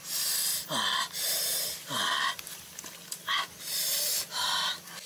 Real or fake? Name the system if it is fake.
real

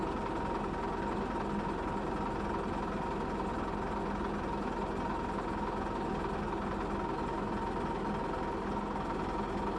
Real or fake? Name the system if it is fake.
real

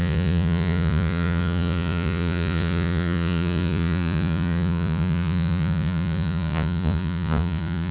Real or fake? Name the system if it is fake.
fake, vocoder, Vocos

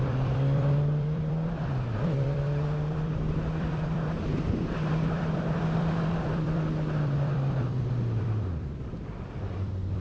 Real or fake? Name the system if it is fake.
fake, vocoder, BigVGAN v2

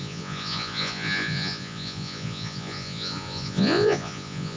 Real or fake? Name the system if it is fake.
fake, vocoder, Vocos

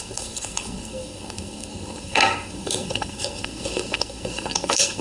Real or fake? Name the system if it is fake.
fake, codec, SNAC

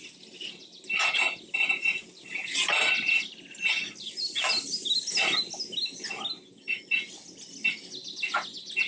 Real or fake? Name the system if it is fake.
real